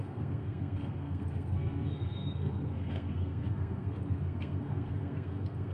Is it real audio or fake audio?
fake